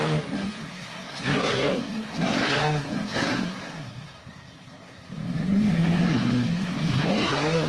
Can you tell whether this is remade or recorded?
remade